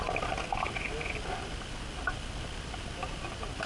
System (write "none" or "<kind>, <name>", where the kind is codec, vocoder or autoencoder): none